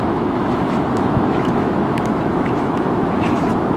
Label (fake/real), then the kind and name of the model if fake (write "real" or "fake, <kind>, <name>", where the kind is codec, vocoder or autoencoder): fake, autoencoder, DAC-VAE